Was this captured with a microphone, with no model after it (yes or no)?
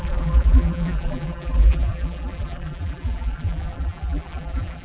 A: no